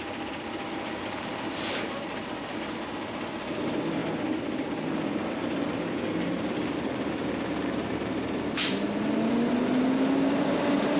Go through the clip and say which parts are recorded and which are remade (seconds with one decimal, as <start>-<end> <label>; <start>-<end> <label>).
0.0-11.0 recorded